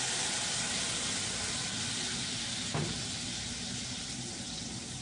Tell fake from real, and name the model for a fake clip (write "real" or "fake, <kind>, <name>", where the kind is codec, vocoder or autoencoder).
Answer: real